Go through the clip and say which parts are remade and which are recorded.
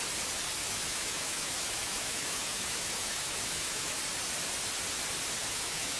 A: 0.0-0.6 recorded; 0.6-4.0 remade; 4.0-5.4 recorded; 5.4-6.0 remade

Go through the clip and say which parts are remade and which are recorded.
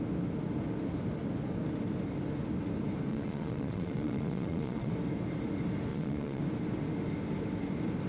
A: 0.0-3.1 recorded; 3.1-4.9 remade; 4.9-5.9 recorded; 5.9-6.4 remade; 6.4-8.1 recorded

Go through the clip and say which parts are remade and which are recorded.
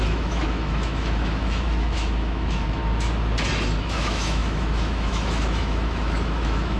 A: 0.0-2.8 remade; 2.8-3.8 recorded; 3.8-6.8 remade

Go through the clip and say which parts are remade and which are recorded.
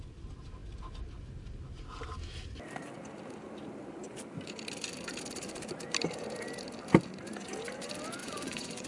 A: 0.0-8.2 recorded; 8.2-8.9 remade